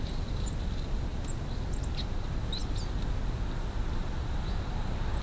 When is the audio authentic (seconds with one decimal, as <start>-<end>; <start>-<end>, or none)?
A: 0.0-5.2